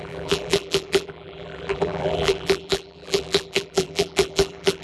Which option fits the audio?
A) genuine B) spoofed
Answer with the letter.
B